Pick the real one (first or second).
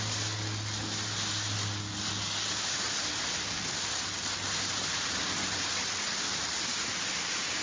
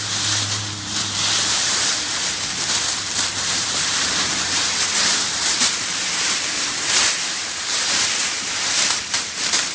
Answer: first